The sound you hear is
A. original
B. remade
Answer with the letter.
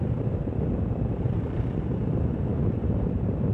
B